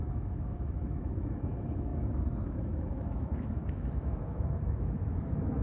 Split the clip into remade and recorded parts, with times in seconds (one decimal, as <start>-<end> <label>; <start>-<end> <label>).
0.0-5.6 remade